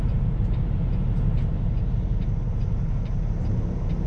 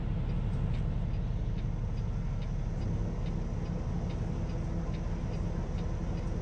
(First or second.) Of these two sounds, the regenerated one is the first